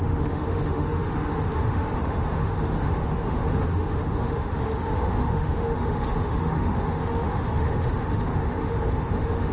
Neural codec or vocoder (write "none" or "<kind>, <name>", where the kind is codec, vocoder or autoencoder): autoencoder, DAC-VAE